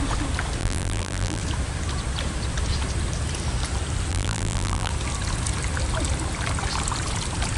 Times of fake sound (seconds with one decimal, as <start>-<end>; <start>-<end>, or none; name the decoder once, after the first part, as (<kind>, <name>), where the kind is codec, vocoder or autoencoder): 0.6-1.4 (vocoder, BigVGAN v2); 4.1-4.9